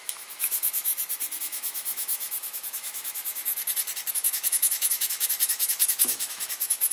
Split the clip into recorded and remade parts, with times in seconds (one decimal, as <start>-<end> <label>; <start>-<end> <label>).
0.0-0.9 remade; 0.9-1.4 recorded; 1.4-3.5 remade; 3.5-4.1 recorded; 4.1-6.9 remade